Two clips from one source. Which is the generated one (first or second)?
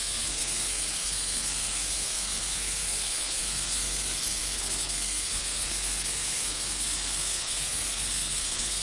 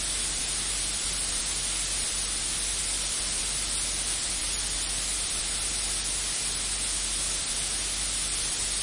first